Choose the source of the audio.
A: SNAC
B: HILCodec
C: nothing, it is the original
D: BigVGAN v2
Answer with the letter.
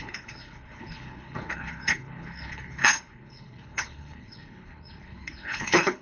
B